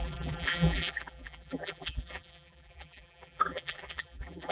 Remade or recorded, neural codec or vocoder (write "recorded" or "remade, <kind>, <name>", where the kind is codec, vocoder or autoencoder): remade, vocoder, BigVGAN v2